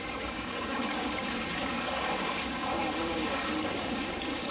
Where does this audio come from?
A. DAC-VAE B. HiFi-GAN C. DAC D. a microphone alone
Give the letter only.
C